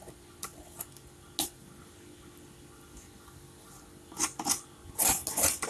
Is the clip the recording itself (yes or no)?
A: yes